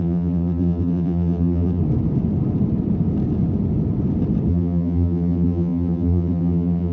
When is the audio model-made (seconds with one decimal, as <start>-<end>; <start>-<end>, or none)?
0.0-1.8; 4.5-6.9

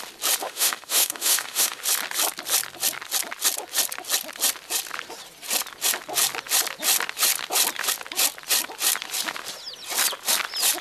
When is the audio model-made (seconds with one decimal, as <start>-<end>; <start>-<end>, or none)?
0.4-1.8

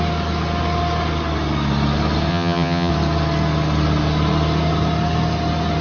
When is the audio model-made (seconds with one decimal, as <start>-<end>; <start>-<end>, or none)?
2.3-2.9

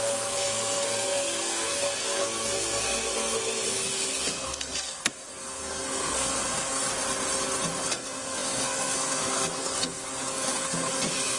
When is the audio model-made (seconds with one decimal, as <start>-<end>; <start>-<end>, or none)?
0.0-6.8; 7.9-11.4

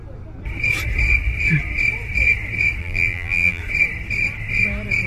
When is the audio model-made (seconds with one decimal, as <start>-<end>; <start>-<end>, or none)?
2.8-3.6